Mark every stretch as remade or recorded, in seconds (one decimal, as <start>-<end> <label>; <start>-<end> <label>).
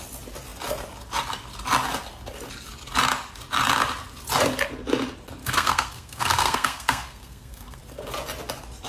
0.0-5.4 recorded; 5.4-7.8 remade; 7.8-8.9 recorded